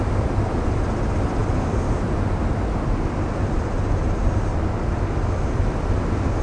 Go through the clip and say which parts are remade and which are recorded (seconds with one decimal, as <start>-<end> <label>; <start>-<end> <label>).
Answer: 0.0-1.4 remade; 1.4-5.2 recorded; 5.2-6.4 remade